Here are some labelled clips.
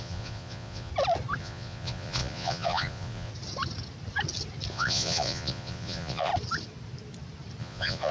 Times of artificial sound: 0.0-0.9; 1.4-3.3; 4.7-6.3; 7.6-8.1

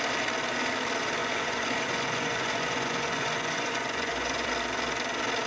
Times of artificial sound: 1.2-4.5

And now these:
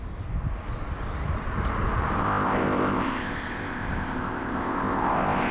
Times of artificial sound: 2.2-5.5